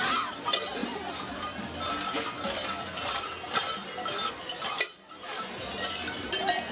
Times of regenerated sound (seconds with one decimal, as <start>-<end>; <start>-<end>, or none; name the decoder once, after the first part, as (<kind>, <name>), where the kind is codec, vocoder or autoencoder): none